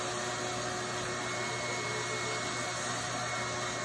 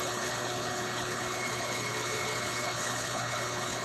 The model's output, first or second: second